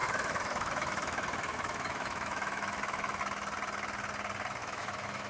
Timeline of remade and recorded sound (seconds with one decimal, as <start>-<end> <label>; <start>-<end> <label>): 0.0-3.2 remade; 3.2-4.6 recorded; 4.6-5.3 remade